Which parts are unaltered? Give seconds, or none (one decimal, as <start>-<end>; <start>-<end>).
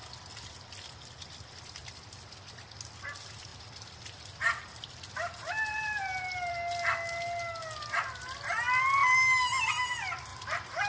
0.0-3.5; 6.5-10.3